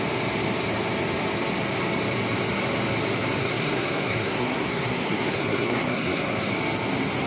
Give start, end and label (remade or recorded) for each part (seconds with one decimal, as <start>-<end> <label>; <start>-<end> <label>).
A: 0.0-3.4 recorded; 3.4-6.5 remade; 6.5-7.3 recorded